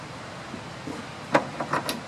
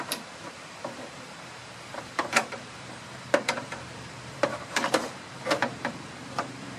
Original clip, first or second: first